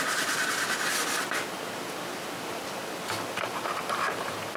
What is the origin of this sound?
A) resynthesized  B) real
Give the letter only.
B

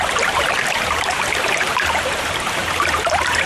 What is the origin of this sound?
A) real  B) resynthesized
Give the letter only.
B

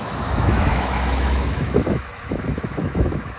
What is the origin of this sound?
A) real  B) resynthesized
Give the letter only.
B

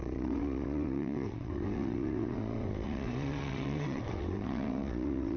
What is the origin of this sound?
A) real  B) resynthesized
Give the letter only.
B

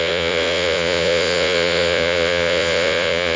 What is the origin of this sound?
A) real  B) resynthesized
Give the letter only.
B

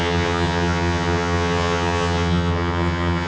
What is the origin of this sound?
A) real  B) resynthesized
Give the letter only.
B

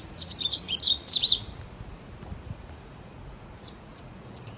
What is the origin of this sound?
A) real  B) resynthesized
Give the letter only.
B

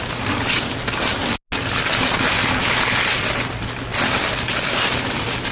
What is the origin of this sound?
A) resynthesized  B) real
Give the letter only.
B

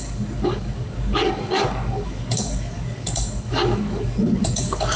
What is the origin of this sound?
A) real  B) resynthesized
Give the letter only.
B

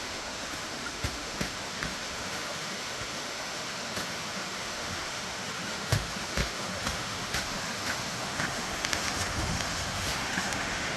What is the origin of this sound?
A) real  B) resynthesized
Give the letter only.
B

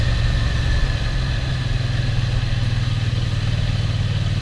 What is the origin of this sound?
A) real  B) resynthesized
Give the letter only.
A